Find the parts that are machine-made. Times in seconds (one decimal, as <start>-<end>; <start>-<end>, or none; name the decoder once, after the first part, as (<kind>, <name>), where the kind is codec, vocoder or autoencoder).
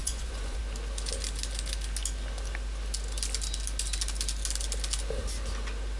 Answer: 0.0-0.6 (vocoder, Vocos)